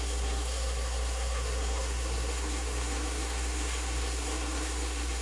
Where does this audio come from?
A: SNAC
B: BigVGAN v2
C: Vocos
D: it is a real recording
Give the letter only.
A